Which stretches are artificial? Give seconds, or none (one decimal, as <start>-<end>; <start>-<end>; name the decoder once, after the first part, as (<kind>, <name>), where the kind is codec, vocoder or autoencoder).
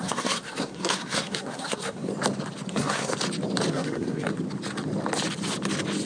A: 0.0-2.1 (codec, SNAC); 2.7-3.1; 3.7-4.3